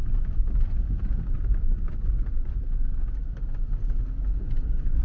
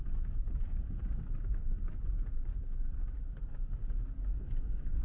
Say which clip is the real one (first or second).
first